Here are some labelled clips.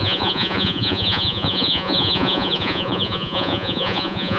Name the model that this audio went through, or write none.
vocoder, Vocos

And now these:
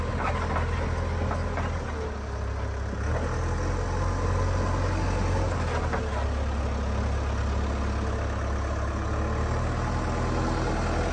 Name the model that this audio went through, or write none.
none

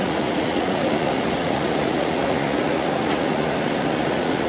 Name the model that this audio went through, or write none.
vocoder, Vocos